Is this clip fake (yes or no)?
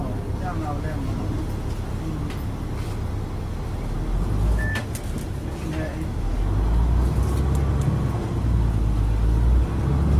no